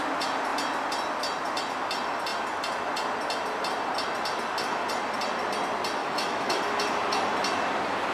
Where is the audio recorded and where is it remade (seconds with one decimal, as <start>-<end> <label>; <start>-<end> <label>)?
0.0-6.0 recorded; 6.0-6.6 remade; 6.6-8.1 recorded